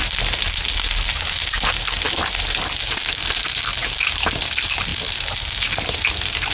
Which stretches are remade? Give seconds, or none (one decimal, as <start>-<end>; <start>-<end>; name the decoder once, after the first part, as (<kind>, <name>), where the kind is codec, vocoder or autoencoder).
none